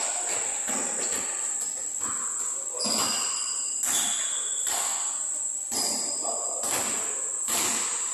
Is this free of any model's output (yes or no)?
yes